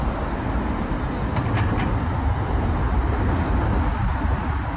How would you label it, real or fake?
real